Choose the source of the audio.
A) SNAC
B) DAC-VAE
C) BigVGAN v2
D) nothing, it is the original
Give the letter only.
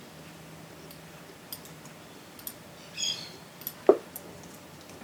D